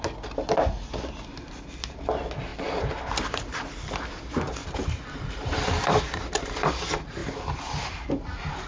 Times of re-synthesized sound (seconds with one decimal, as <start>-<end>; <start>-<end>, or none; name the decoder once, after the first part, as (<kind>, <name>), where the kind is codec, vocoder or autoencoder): 2.5-4.0 (vocoder, BigVGAN v2); 4.6-6.8